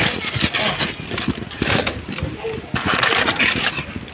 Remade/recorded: recorded